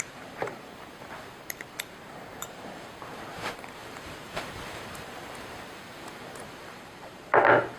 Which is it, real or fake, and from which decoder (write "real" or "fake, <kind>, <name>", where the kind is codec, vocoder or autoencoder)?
fake, vocoder, BigVGAN v2